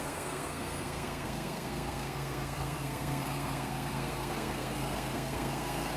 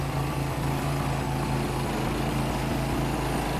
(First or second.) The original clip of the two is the second